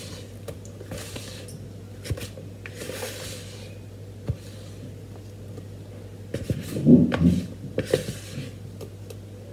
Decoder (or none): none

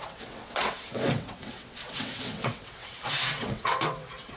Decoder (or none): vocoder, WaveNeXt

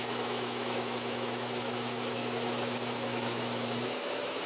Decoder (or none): autoencoder, DAC-VAE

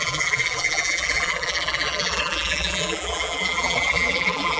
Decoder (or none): vocoder, BigVGAN v2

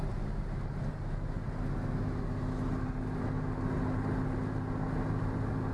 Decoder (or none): none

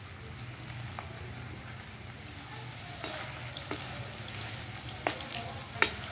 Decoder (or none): none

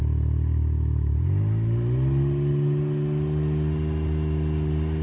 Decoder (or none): none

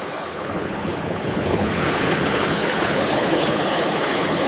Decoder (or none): codec, HILCodec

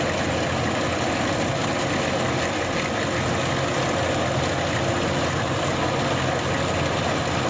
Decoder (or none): none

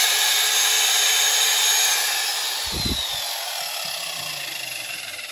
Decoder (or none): none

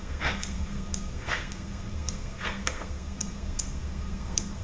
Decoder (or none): codec, SNAC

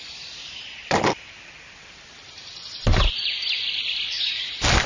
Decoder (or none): vocoder, BigVGAN v2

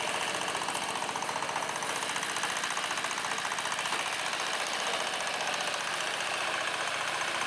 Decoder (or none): none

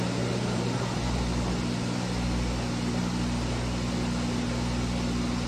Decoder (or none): none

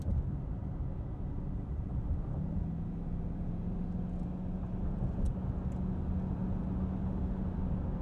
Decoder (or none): none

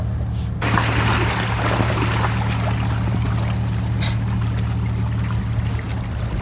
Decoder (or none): none